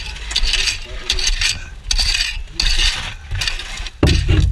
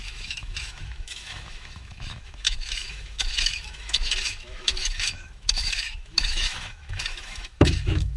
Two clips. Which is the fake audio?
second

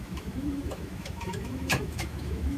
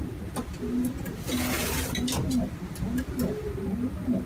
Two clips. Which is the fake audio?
first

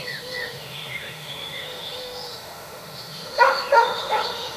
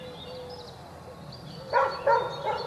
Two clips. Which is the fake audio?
first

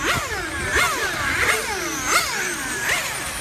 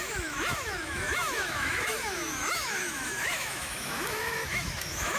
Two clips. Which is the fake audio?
second